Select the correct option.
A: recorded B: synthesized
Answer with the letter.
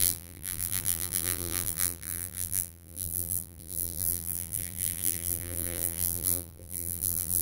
B